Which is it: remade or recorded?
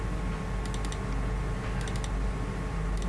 recorded